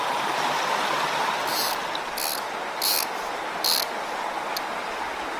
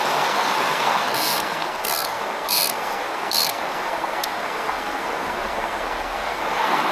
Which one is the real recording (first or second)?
first